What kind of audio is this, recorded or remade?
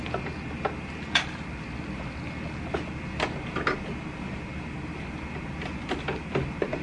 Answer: recorded